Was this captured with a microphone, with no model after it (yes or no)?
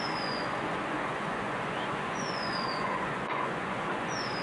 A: no